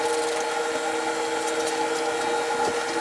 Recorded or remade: recorded